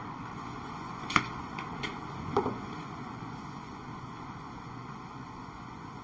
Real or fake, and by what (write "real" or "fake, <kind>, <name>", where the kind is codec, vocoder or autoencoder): fake, vocoder, Vocos